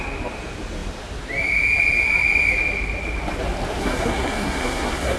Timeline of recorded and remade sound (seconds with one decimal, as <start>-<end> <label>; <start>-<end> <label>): 0.0-3.8 recorded; 3.8-5.2 remade

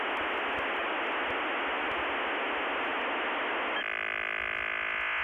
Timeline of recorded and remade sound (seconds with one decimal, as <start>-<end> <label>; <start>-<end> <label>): 0.0-5.2 recorded

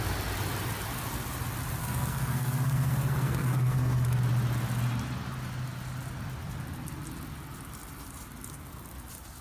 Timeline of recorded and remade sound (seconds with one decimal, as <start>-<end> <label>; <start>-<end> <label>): 0.0-1.8 recorded; 1.8-4.2 remade; 4.2-9.4 recorded

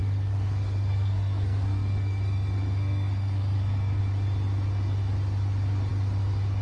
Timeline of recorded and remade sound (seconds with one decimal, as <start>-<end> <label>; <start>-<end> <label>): 0.0-4.0 remade; 4.0-6.6 recorded

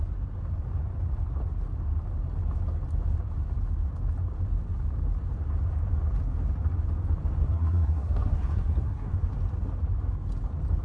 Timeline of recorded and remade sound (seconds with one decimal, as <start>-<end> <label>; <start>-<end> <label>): 0.0-7.4 recorded; 7.4-9.1 remade; 9.1-10.8 recorded

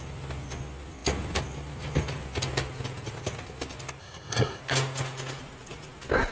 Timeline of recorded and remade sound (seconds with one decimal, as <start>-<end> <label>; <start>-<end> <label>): 0.0-4.0 recorded; 4.0-4.6 remade; 4.6-6.3 recorded

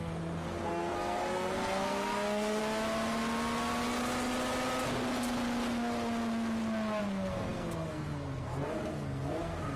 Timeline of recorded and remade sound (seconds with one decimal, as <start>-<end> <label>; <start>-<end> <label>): 0.0-2.6 remade; 2.6-7.0 recorded; 7.0-9.8 remade